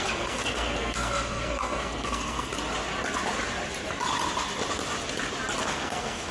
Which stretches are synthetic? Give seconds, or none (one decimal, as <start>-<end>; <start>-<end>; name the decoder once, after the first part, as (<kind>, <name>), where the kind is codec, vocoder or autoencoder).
0.0-2.5 (codec, SNAC); 5.6-6.3